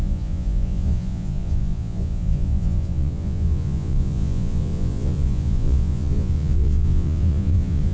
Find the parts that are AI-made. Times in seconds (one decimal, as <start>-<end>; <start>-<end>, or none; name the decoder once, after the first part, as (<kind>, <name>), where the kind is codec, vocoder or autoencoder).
0.0-7.9 (vocoder, Vocos)